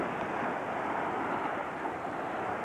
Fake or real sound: real